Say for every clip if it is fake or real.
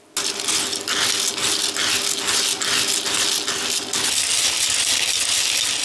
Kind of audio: real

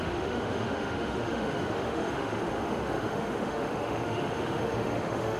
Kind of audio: fake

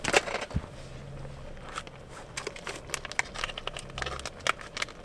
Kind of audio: real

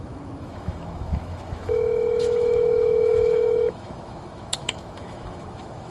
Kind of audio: fake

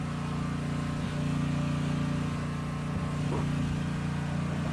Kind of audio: real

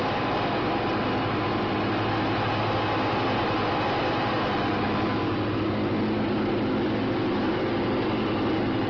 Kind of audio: real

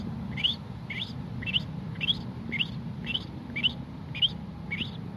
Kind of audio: real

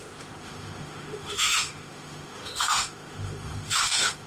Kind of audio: fake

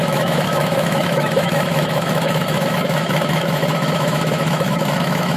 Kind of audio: fake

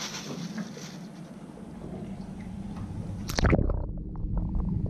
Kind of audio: real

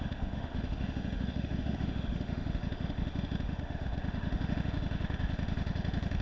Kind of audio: fake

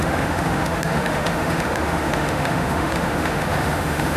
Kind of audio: fake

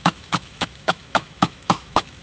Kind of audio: fake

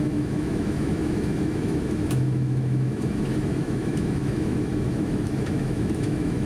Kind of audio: fake